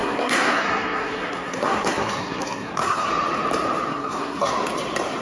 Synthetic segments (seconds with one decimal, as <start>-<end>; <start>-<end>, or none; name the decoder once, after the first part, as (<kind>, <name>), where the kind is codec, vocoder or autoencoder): 0.0-3.1 (codec, SNAC); 3.9-4.5